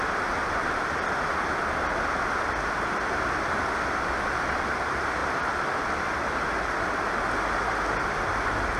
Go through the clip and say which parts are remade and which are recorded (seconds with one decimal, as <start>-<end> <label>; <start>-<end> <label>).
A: 0.0-8.8 recorded